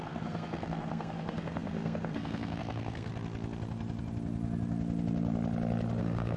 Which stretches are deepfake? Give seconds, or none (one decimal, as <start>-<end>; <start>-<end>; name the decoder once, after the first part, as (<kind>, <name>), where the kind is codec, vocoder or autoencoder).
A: 0.0-3.1 (codec, SNAC); 6.0-6.4